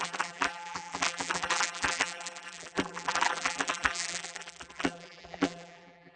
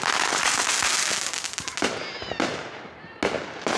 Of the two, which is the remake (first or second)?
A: first